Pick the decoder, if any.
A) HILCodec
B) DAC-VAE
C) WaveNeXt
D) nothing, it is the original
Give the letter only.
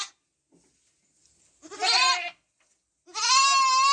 D